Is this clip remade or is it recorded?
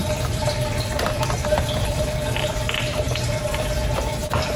remade